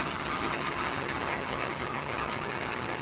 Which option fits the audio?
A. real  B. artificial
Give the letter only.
B